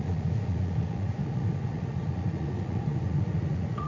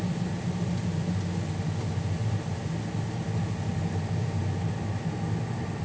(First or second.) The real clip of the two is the second